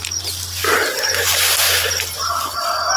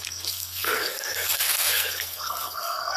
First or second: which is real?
first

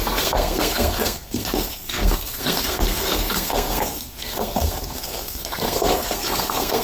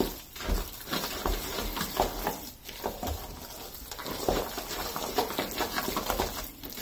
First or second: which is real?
second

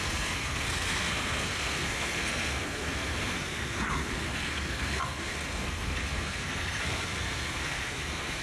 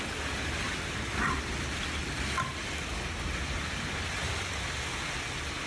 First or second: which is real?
second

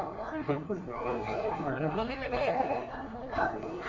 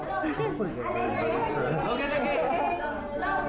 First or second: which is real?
second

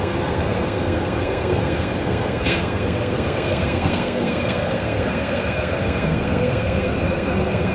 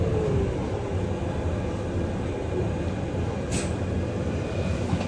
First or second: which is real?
second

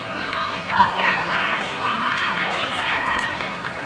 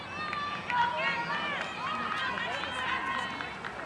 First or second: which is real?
second